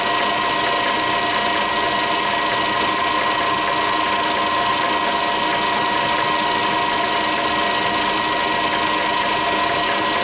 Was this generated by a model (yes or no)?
no